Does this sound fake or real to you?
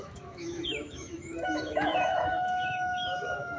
fake